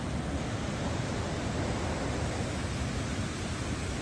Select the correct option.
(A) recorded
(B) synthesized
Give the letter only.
A